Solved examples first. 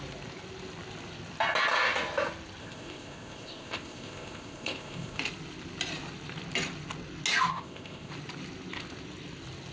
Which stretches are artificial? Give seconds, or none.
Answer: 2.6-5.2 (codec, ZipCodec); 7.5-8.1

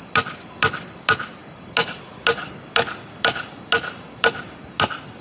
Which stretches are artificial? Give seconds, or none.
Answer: none

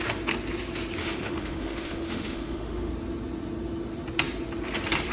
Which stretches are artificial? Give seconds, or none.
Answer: 1.0-2.9 (autoencoder, DAC-VAE)

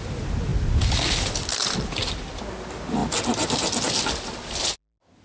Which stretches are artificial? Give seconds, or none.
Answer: none

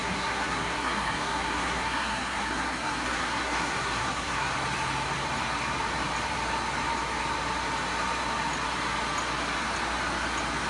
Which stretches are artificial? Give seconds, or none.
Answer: 0.0-4.5 (codec, SNAC)